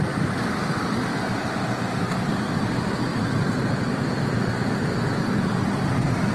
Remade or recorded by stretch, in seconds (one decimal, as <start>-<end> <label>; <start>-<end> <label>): 0.0-3.1 recorded; 3.1-4.0 remade; 4.0-6.3 recorded